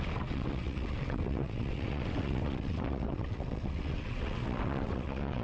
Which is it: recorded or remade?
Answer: remade